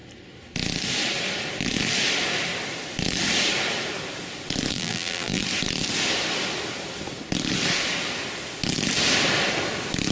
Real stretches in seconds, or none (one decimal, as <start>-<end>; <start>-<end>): 0.0-4.7; 5.4-10.1